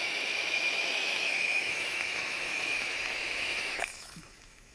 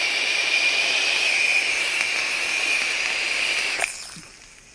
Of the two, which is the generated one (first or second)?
first